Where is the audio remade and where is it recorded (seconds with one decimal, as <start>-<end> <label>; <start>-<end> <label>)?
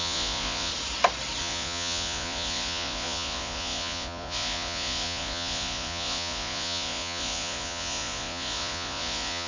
0.0-0.7 remade; 0.7-1.4 recorded; 1.4-9.5 remade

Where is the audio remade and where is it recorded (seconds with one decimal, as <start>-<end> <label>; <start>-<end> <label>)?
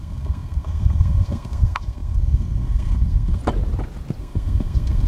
0.0-3.4 remade; 3.4-4.2 recorded; 4.2-5.1 remade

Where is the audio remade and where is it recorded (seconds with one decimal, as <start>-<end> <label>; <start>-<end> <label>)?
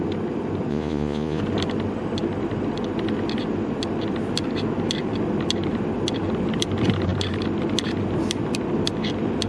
0.0-0.7 recorded; 0.7-1.4 remade; 1.4-9.5 recorded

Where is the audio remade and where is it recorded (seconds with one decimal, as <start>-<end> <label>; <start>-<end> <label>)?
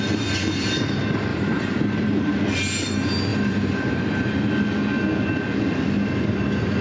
0.0-1.3 recorded; 1.3-2.3 remade; 2.3-3.3 recorded; 3.3-4.6 remade; 4.6-6.8 recorded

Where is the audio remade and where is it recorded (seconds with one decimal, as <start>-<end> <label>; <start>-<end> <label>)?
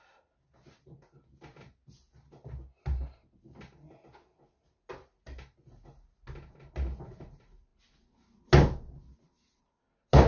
0.0-10.3 recorded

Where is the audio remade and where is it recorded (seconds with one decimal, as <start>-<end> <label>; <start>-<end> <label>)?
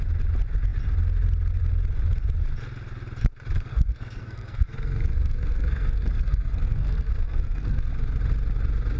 0.0-3.7 recorded; 3.7-7.9 remade; 7.9-9.0 recorded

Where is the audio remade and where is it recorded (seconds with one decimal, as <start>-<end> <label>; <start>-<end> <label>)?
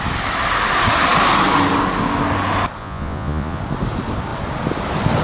0.0-2.8 recorded; 2.8-3.6 remade; 3.6-5.2 recorded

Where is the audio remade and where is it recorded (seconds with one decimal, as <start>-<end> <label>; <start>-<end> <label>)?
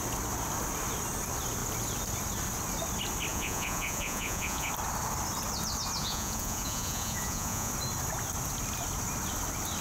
0.0-3.3 recorded; 3.3-4.7 remade; 4.7-6.0 recorded; 6.0-7.7 remade; 7.7-9.8 recorded